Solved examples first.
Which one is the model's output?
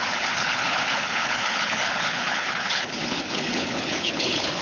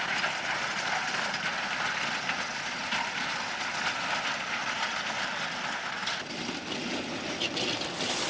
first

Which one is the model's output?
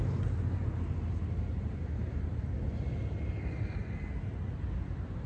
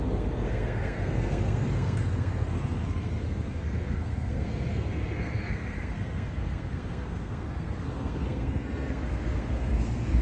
second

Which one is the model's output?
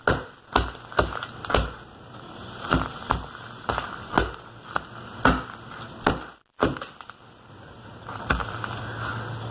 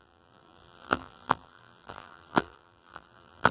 second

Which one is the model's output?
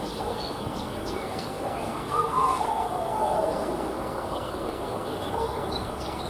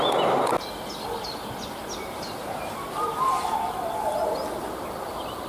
first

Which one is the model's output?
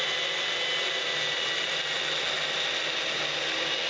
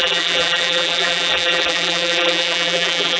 second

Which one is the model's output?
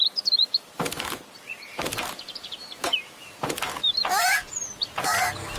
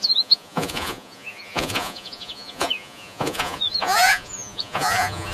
second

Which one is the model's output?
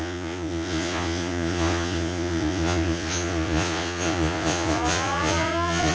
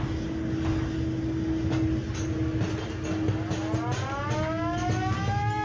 first